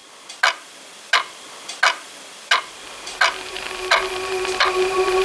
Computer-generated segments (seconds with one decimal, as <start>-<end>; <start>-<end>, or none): none